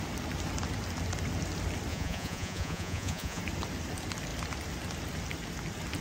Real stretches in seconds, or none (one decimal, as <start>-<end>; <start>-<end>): 0.0-1.9; 3.4-6.0